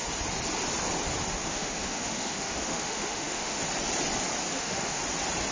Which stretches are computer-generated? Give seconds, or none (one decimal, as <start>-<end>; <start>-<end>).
1.4-3.6; 4.5-5.0